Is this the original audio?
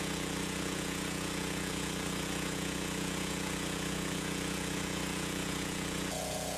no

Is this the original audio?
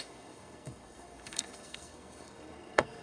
no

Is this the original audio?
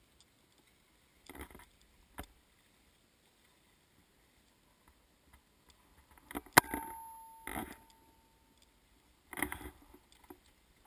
yes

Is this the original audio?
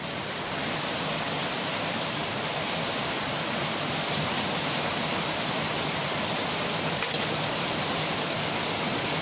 yes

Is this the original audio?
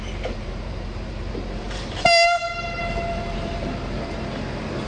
no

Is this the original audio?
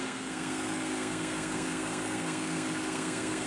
no